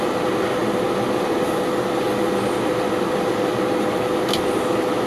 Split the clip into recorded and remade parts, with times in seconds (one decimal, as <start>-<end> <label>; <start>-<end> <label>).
0.0-5.1 recorded